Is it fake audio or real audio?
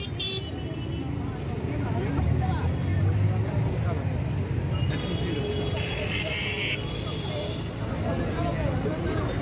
real